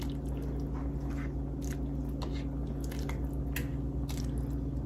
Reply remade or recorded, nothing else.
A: recorded